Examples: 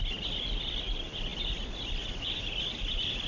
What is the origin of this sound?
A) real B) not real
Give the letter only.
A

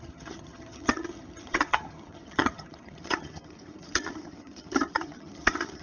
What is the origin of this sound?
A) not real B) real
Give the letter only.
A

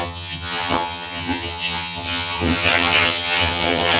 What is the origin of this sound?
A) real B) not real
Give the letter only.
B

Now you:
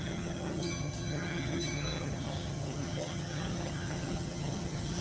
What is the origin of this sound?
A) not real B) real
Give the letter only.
A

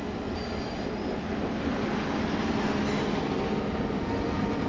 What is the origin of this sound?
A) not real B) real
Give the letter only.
B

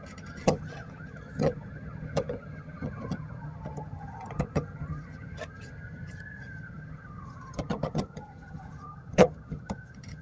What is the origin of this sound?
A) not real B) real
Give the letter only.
A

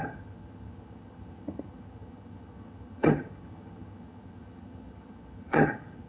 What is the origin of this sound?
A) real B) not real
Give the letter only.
B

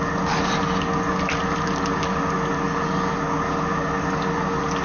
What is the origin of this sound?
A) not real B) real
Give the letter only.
B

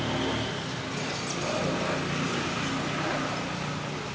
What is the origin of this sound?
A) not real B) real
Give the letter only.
B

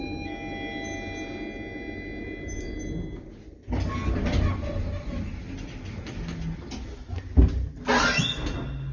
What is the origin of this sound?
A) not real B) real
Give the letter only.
B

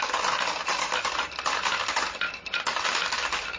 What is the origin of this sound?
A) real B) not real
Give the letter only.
A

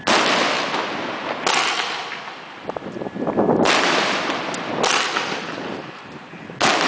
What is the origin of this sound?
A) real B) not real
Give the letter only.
A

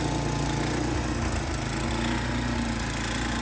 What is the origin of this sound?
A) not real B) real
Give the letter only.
B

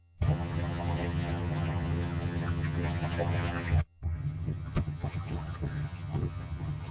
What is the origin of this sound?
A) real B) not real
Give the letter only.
B